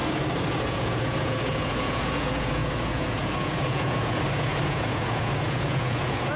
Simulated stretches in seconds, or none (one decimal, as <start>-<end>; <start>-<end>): 0.5-6.4